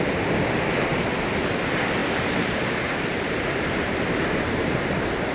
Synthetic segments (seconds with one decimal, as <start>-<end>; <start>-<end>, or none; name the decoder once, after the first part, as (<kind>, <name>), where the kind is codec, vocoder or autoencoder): 2.0-5.3 (vocoder, BigVGAN v2)